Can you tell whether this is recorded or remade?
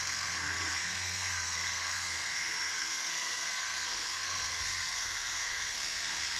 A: remade